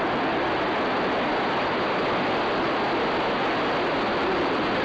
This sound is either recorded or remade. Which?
recorded